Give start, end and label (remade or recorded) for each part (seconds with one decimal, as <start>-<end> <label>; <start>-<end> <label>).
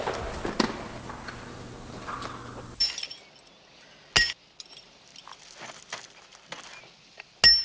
0.0-7.6 recorded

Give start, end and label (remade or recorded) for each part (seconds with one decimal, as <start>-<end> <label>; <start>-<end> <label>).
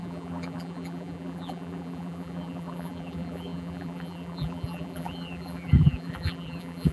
0.0-6.9 remade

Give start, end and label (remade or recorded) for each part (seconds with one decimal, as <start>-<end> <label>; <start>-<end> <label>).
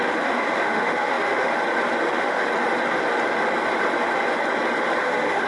0.0-1.5 remade; 1.5-2.0 recorded; 2.0-2.4 remade; 2.4-5.0 recorded; 5.0-5.5 remade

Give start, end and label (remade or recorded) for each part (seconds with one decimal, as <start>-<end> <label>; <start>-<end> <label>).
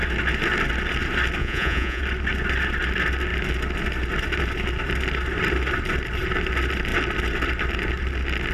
0.0-1.4 recorded; 1.4-2.0 remade; 2.0-8.5 recorded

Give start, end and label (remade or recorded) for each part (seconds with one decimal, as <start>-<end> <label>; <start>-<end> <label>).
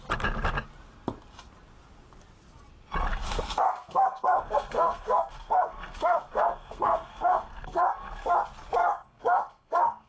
0.0-3.1 recorded; 3.1-8.3 remade; 8.3-8.8 recorded; 8.8-10.1 remade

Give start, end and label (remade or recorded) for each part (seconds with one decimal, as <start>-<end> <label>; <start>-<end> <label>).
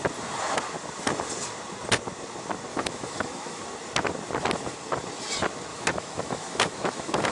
0.0-2.7 recorded; 2.7-3.6 remade; 3.6-5.7 recorded; 5.7-7.3 remade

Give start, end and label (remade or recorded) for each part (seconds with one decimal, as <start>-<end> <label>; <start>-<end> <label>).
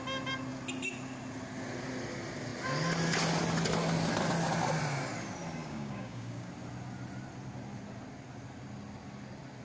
0.0-5.6 recorded; 5.6-6.5 remade; 6.5-9.6 recorded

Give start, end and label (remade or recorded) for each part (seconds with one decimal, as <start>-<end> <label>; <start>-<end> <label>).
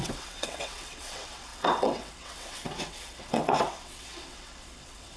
0.0-5.2 remade